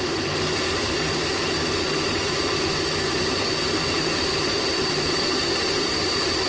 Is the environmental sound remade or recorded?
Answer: remade